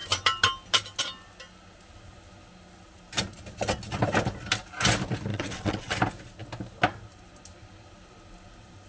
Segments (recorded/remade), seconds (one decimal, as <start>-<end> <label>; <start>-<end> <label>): 0.0-5.3 recorded; 5.3-5.9 remade; 5.9-8.9 recorded